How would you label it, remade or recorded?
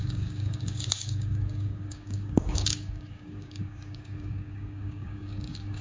remade